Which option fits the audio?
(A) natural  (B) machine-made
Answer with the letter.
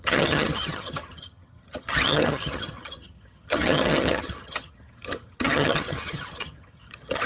B